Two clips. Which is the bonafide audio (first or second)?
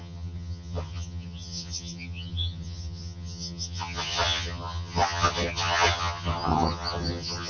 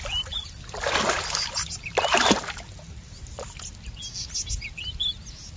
second